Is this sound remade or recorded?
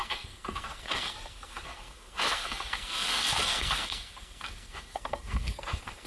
remade